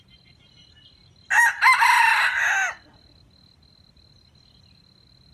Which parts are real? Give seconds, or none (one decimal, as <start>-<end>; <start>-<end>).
0.0-5.3